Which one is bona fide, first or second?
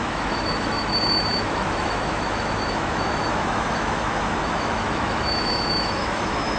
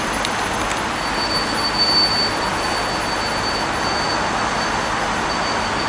second